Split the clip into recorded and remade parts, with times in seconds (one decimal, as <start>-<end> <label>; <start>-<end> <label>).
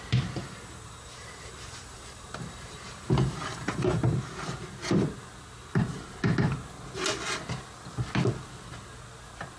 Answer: 0.0-0.4 recorded; 0.4-4.1 remade; 4.1-9.6 recorded